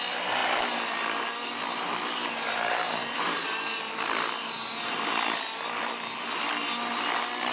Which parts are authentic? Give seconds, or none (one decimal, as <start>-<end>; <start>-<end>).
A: 0.0-7.5